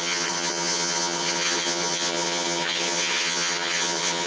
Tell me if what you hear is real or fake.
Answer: fake